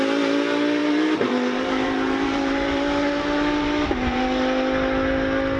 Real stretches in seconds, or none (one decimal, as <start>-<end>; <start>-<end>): 0.0-0.8; 4.2-5.6